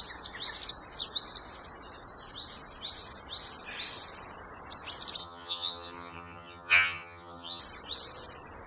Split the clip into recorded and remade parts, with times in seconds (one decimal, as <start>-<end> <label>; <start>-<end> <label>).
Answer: 0.0-5.2 recorded; 5.2-7.6 remade; 7.6-8.7 recorded